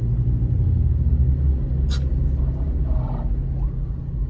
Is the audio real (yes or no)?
yes